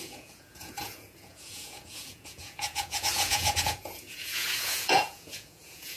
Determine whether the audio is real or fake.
fake